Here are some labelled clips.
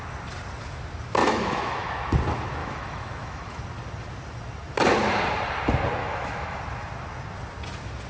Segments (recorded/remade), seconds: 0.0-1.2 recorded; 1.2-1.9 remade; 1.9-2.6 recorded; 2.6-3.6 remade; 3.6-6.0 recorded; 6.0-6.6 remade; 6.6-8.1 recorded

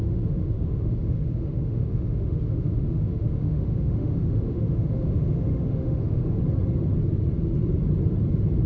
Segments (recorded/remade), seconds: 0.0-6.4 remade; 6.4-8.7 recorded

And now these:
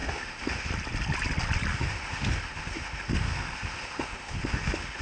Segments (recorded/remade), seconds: 0.0-0.7 remade; 0.7-1.7 recorded; 1.7-5.0 remade

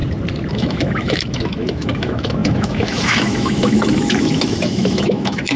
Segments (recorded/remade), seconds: 0.0-0.5 recorded; 0.5-5.6 remade

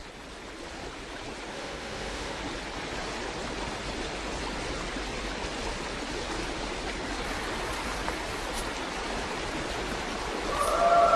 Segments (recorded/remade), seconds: 0.0-1.5 recorded; 1.5-2.4 remade; 2.4-11.2 recorded

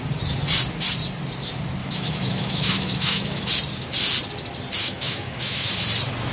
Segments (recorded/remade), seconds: 0.0-1.8 recorded; 1.8-3.5 remade; 3.5-4.8 recorded; 4.8-5.7 remade; 5.7-6.3 recorded

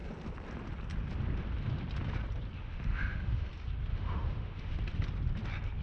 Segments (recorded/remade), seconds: 0.0-2.6 recorded; 2.6-3.4 remade; 3.4-3.9 recorded; 3.9-4.8 remade; 4.8-5.8 recorded